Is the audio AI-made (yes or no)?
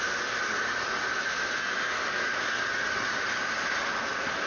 no